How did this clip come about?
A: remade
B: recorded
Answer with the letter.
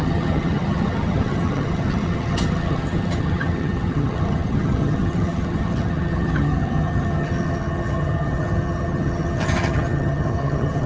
A